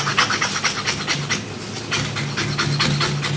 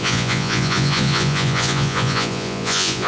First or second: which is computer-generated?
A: second